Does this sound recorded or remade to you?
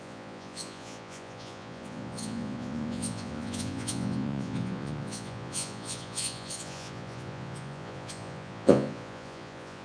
remade